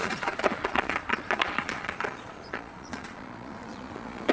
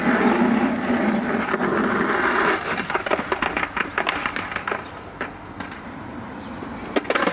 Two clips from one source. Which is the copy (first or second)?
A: first